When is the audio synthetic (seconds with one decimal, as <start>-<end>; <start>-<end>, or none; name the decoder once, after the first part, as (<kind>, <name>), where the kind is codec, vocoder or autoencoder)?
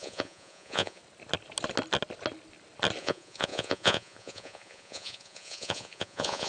0.0-1.0 (vocoder, Vocos); 3.0-6.5